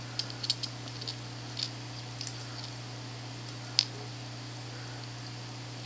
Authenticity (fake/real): real